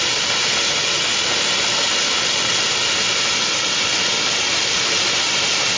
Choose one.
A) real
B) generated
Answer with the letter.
B